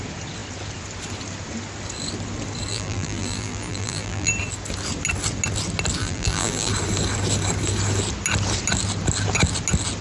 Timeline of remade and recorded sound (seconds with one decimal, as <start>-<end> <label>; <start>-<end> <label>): 0.0-2.7 recorded; 2.7-4.3 remade; 4.3-6.0 recorded; 6.0-6.7 remade; 6.7-10.0 recorded